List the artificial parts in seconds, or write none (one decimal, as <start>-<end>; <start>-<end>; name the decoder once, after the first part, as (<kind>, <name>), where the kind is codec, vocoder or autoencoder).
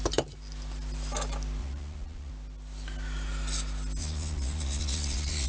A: 1.6-2.3 (vocoder, Vocos); 4.0-5.5